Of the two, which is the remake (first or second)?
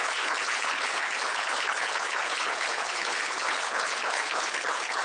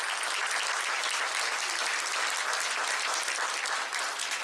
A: first